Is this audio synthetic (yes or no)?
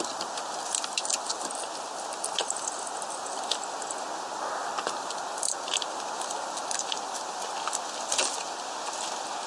no